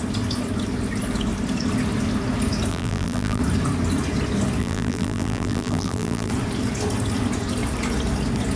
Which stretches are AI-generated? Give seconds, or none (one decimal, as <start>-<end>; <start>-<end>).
2.7-3.4; 4.6-6.3